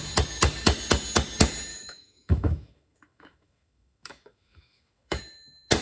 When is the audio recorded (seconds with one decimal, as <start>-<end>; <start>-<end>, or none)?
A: 0.0-1.7; 5.2-5.8